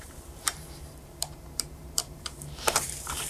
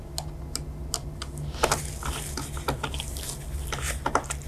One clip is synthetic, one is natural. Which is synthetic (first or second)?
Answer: first